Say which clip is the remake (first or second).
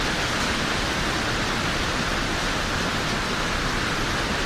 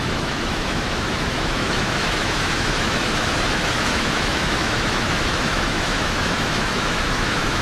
second